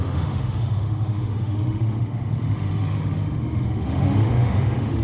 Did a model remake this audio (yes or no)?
yes